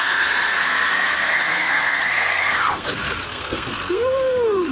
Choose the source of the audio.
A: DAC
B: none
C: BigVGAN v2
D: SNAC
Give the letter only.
D